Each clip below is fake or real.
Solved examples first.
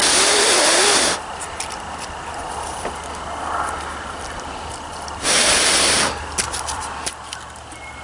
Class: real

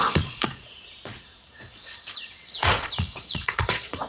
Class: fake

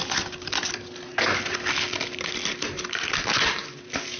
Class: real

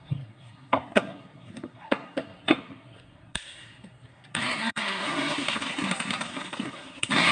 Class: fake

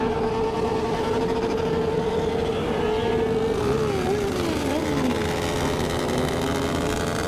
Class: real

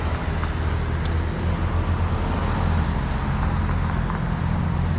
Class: real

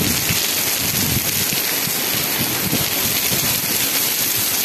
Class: real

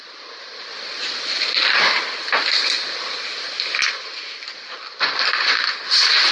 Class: real